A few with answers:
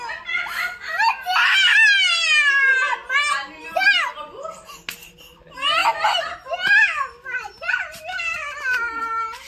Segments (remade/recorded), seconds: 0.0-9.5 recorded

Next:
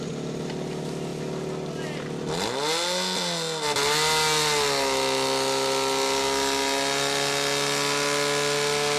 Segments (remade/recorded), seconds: 0.0-9.0 recorded

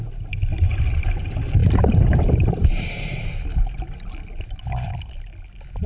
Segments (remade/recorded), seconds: 0.0-0.7 remade; 0.7-1.2 recorded; 1.2-5.9 remade

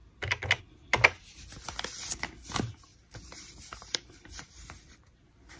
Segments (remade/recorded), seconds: 0.0-2.9 recorded; 2.9-4.7 remade; 4.7-5.6 recorded

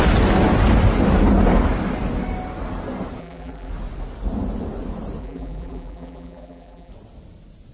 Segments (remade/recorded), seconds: 0.0-3.2 recorded; 3.2-3.7 remade; 3.7-5.2 recorded; 5.2-6.9 remade; 6.9-7.7 recorded

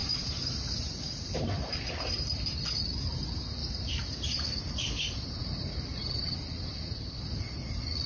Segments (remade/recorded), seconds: 0.0-1.7 remade; 1.7-3.6 recorded; 3.6-4.6 remade; 4.6-5.4 recorded; 5.4-7.2 remade; 7.2-8.1 recorded

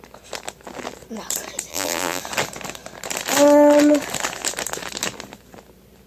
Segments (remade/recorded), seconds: 0.0-1.7 recorded; 1.7-2.2 remade; 2.2-6.1 recorded